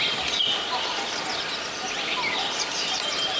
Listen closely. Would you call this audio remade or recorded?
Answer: recorded